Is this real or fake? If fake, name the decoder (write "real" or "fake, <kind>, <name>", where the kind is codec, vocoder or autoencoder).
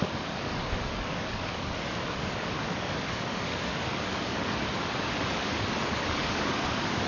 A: fake, codec, DAC